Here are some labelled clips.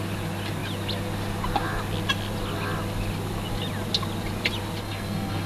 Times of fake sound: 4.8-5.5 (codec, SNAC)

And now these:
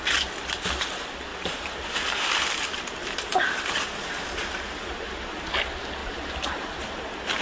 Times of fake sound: 1.3-5.5 (vocoder, BigVGAN v2); 6.0-7.0

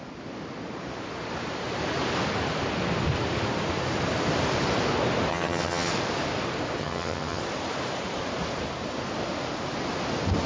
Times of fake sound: 5.3-5.9 (vocoder, HiFi-GAN); 6.8-7.4

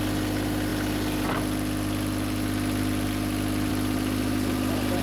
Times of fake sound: none